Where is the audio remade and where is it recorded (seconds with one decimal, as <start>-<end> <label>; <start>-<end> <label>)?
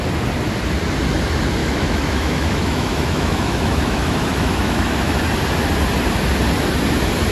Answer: 0.0-1.6 recorded; 1.6-5.2 remade; 5.2-7.3 recorded